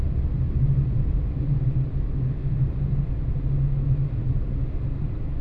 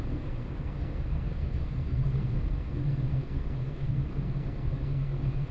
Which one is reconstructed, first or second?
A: second